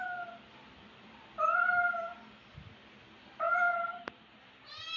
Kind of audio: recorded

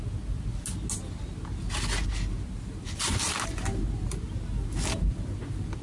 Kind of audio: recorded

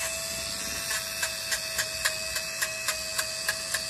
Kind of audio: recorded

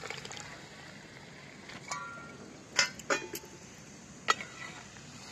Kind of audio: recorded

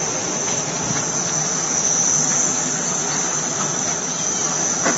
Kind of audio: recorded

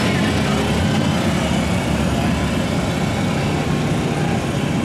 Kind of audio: recorded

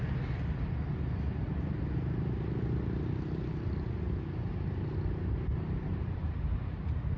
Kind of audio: recorded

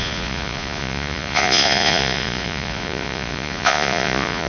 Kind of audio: remade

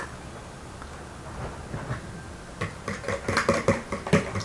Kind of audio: recorded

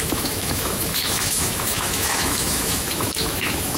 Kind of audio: remade